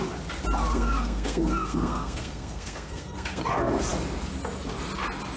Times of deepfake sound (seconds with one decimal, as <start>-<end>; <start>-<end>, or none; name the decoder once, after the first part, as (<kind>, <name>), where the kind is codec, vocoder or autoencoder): 0.7-3.4 (codec, SNAC)